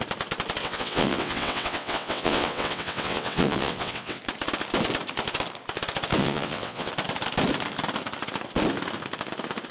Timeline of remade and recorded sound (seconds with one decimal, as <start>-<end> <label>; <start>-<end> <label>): 0.0-0.6 recorded; 0.6-4.2 remade; 4.2-6.2 recorded; 6.2-6.9 remade; 6.9-9.7 recorded